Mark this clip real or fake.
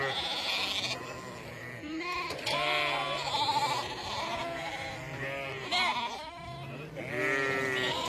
real